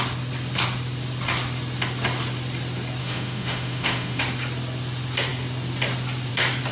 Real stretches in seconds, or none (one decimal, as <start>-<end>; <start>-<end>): 0.0-3.0; 4.2-6.7